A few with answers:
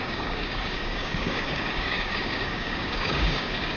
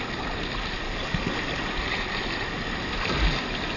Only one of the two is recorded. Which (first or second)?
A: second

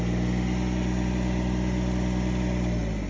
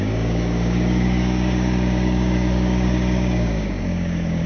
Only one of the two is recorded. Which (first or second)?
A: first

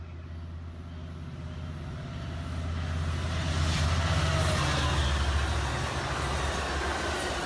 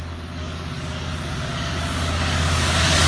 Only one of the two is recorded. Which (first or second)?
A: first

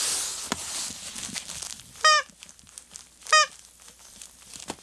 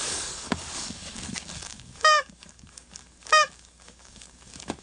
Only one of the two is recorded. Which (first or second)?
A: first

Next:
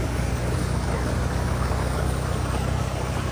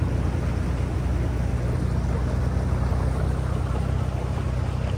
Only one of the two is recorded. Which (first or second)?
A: second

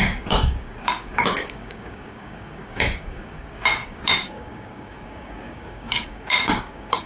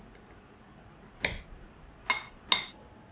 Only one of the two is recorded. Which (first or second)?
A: second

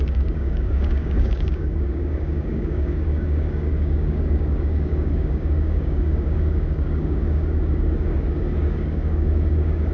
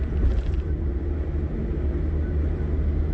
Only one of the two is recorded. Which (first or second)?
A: second